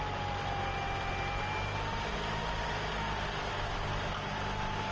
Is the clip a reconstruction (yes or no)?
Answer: no